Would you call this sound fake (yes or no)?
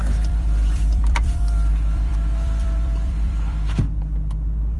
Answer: yes